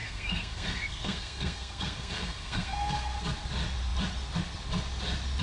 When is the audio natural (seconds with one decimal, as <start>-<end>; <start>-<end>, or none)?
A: 3.2-5.4